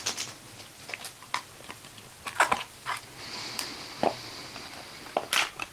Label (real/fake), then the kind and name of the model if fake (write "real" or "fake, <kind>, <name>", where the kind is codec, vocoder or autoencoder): real